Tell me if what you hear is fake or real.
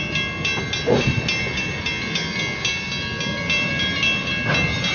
real